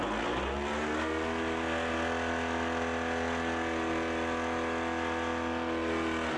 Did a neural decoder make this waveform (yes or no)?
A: no